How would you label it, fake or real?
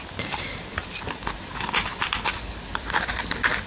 fake